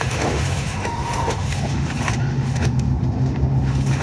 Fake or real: fake